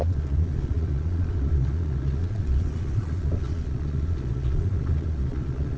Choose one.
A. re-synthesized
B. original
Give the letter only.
A